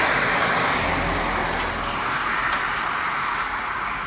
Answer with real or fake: real